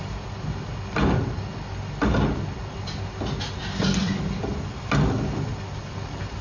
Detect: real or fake real